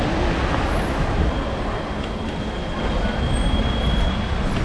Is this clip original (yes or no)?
yes